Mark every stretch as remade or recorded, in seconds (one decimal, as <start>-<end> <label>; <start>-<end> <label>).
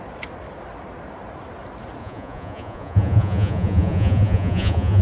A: 0.0-2.0 recorded; 2.0-5.0 remade